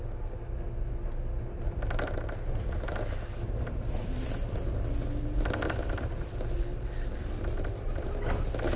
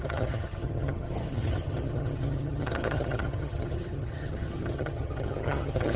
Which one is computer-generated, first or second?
second